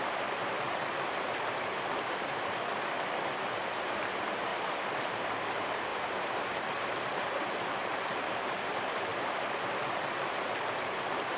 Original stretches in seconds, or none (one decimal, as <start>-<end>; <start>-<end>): 0.0-5.9; 6.5-11.4

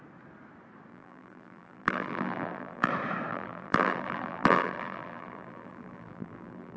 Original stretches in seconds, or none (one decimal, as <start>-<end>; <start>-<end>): 0.0-0.9; 2.9-3.3

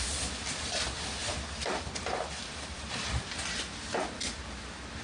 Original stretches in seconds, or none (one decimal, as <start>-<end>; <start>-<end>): 0.0-1.2; 4.2-5.0

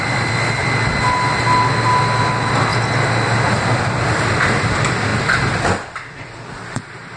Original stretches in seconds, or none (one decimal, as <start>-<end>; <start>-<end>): 0.6-2.2; 2.7-3.5

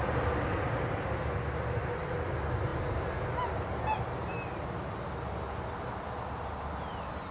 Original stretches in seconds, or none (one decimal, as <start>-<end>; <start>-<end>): 0.0-7.3